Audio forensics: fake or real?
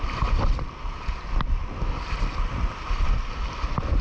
real